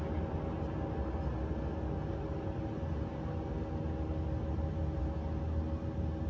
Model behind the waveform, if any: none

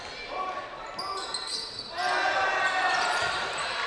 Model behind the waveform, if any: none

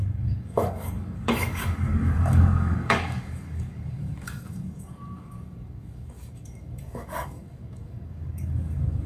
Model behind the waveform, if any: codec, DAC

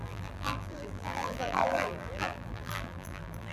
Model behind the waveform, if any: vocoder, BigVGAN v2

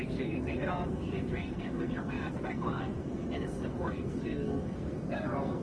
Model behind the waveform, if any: codec, SNAC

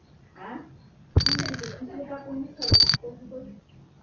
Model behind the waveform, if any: none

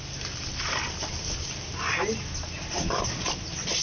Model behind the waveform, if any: none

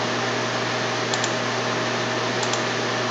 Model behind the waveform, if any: none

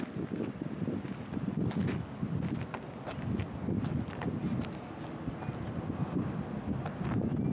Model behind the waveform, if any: none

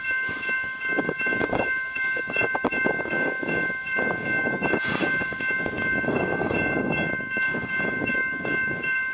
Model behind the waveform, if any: codec, DAC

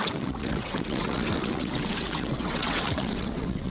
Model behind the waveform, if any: vocoder, WaveNeXt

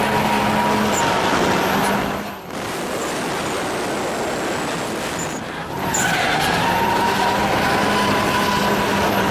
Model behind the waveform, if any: none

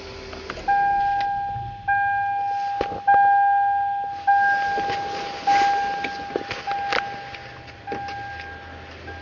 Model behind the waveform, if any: none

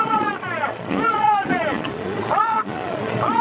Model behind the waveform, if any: vocoder, Vocos